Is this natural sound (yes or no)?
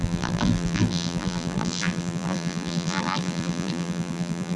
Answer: no